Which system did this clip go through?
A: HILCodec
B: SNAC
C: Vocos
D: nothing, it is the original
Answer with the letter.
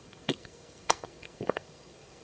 B